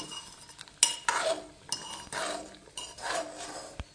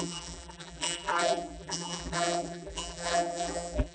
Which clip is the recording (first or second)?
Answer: first